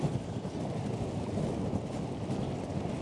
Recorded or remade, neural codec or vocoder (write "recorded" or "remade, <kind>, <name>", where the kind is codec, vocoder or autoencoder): recorded